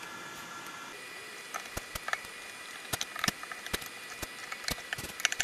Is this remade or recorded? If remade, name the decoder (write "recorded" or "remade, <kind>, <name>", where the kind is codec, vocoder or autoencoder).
recorded